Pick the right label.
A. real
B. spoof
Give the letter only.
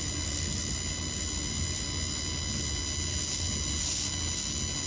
A